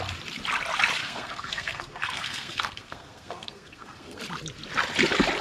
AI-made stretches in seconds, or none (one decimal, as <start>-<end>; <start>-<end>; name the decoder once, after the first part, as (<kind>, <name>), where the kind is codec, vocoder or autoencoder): 1.0-4.2 (codec, SNAC)